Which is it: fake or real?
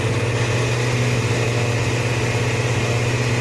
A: real